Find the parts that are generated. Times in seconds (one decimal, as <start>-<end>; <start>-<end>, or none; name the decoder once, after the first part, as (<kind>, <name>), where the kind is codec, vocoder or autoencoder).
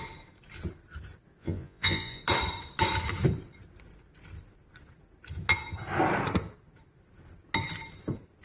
1.4-2.2 (vocoder, Vocos)